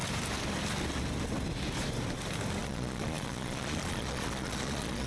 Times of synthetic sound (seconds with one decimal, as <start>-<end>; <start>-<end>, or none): 2.6-5.1